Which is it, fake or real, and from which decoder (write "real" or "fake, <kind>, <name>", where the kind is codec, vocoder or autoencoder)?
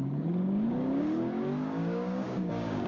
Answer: fake, codec, DAC